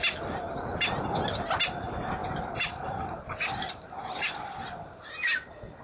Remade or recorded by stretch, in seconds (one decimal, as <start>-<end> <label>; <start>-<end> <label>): 0.0-2.2 recorded; 2.2-5.0 remade; 5.0-5.8 recorded